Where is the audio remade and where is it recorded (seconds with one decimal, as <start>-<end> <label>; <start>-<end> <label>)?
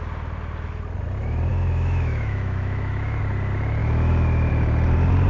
0.0-1.5 recorded; 1.5-3.2 remade; 3.2-3.8 recorded; 3.8-4.5 remade; 4.5-5.3 recorded